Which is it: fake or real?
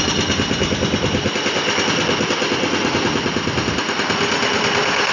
real